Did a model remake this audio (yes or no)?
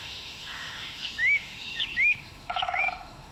yes